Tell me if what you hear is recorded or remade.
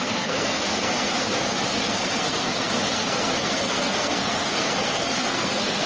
remade